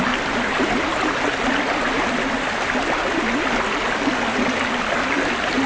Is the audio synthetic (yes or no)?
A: no